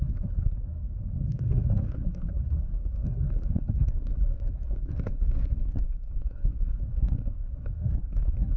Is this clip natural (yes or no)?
no